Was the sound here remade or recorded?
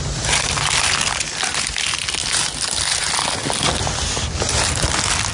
recorded